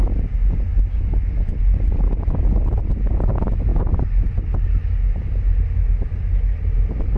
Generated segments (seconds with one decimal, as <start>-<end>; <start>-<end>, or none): none